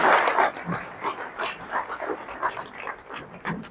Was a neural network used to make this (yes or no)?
yes